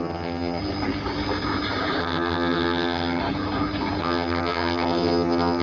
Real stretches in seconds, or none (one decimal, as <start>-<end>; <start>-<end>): 0.6-2.0; 3.2-4.0